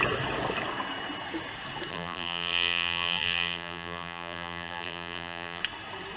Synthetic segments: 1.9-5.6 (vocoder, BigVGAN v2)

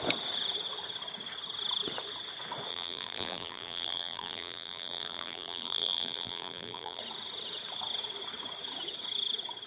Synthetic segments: 2.7-7.0 (vocoder, BigVGAN v2)

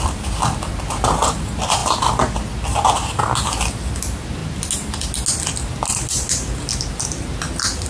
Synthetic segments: none

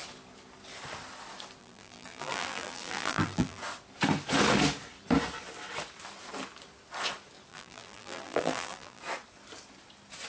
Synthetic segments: 1.6-3.6 (vocoder, BigVGAN v2); 7.5-9.0

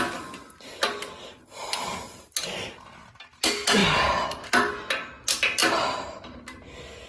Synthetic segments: 5.6-6.2 (vocoder, BigVGAN v2)

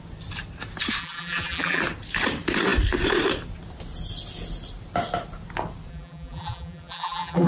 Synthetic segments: 1.0-1.8 (vocoder, BigVGAN v2); 5.9-7.5

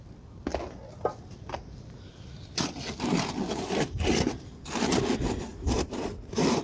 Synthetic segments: 5.5-6.6 (vocoder, BigVGAN v2)

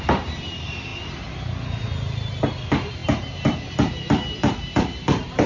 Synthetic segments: 0.0-0.9 (vocoder, BigVGAN v2); 2.6-5.5